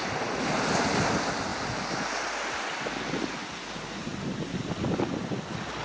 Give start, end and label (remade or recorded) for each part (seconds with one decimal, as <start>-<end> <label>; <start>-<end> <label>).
0.0-5.8 recorded